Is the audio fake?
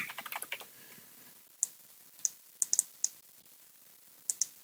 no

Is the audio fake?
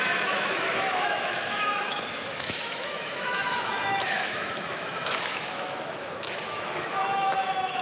yes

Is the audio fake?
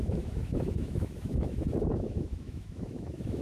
yes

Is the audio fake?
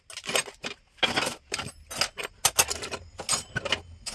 no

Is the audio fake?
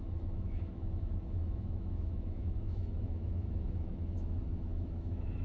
yes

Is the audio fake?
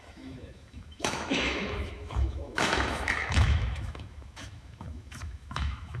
yes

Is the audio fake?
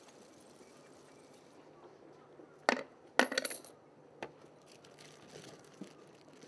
no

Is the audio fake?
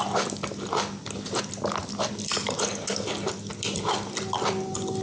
no